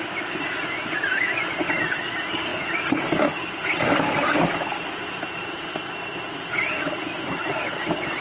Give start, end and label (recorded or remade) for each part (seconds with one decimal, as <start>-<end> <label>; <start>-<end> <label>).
0.0-8.2 recorded